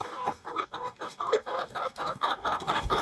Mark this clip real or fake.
fake